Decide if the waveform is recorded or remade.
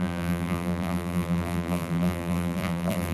remade